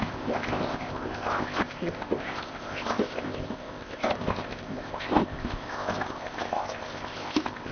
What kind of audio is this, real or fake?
fake